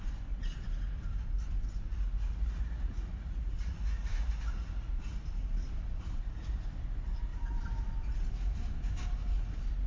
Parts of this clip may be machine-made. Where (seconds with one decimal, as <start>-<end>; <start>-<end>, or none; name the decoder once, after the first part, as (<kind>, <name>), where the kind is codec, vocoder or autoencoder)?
1.9-4.9 (vocoder, Vocos)